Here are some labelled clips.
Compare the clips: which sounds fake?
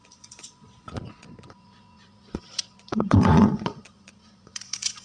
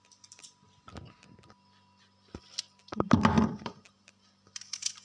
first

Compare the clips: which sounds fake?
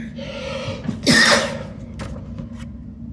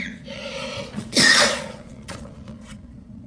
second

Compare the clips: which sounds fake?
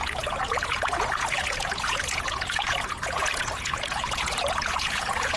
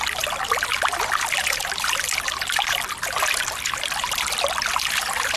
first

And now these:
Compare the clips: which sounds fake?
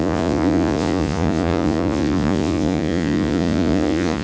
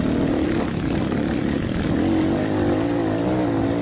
first